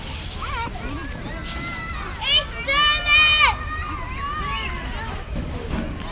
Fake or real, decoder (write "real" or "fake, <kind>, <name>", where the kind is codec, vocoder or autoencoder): real